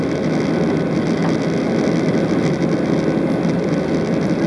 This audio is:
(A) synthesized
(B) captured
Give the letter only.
B